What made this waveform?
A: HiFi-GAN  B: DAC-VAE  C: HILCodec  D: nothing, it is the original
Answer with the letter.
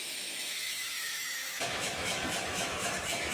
B